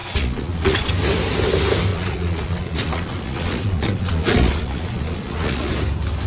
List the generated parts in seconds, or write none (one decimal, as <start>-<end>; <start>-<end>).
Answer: 0.0-0.9; 1.9-5.7